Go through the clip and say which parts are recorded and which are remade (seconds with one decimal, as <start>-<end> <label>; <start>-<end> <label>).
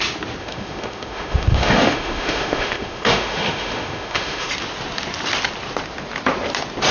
0.0-0.4 recorded; 0.4-4.5 remade; 4.5-6.9 recorded